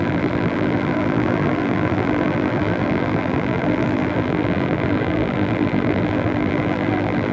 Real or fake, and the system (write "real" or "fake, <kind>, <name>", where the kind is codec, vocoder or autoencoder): fake, vocoder, BigVGAN v2